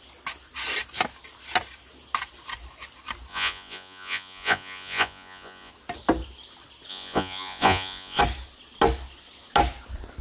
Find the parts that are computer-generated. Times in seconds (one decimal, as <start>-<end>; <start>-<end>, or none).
3.3-5.7; 6.9-8.2